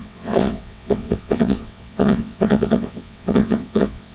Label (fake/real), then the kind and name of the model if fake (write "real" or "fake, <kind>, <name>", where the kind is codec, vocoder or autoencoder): fake, vocoder, WaveNeXt